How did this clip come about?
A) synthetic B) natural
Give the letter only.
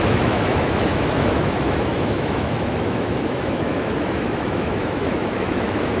A